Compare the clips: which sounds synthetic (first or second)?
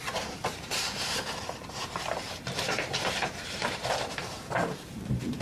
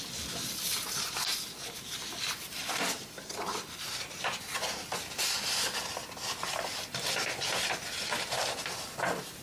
first